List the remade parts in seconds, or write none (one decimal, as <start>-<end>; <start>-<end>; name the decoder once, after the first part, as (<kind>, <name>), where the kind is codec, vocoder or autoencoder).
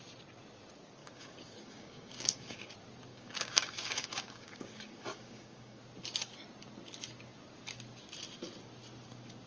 1.0-2.7 (codec, DAC); 3.1-5.8